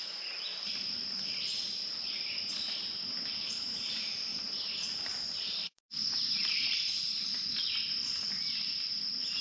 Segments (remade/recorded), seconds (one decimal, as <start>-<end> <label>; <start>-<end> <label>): 0.0-0.5 recorded; 0.5-2.5 remade; 2.5-4.3 recorded; 4.3-5.9 remade; 5.9-9.4 recorded